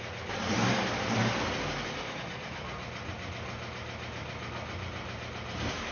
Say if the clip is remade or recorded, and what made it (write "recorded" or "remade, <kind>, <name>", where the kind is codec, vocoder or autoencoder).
recorded